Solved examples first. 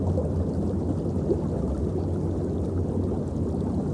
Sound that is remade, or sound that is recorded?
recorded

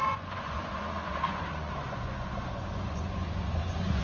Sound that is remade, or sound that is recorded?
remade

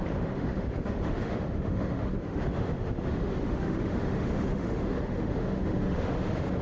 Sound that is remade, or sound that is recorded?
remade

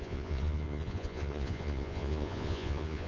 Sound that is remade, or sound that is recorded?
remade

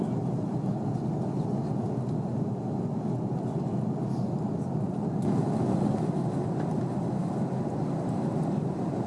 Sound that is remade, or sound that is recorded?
recorded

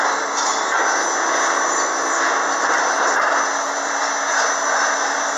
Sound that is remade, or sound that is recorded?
recorded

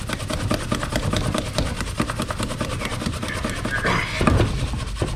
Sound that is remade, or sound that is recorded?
recorded